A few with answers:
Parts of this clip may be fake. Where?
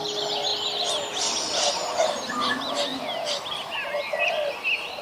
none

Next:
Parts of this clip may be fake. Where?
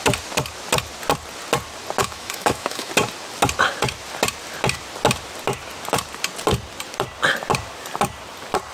2.0-2.9 (autoencoder, DAC-VAE)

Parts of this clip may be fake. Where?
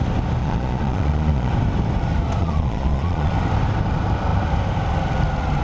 0.4-1.5 (vocoder, Vocos); 2.4-3.3